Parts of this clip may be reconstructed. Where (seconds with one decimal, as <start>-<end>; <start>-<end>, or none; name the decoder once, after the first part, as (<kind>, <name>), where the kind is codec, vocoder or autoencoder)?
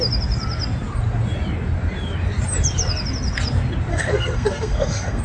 3.9-5.2 (codec, SNAC)